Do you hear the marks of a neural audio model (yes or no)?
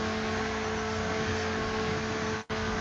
yes